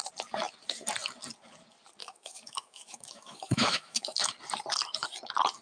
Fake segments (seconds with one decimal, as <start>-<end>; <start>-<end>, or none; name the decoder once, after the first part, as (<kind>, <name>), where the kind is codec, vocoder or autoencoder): 2.0-4.3 (autoencoder, DAC-VAE)